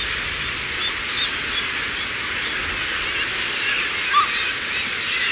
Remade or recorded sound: recorded